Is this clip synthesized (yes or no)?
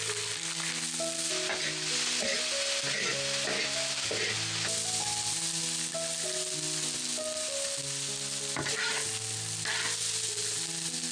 no